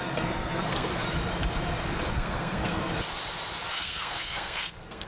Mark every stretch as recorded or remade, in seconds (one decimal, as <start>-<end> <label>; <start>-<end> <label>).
0.0-0.9 remade; 0.9-2.1 recorded; 2.1-2.8 remade; 2.8-3.7 recorded; 3.7-5.1 remade